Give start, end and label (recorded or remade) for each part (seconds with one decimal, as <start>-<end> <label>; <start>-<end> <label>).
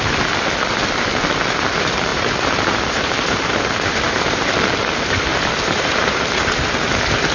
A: 0.0-2.1 recorded; 2.1-4.5 remade; 4.5-5.3 recorded; 5.3-6.2 remade; 6.2-7.3 recorded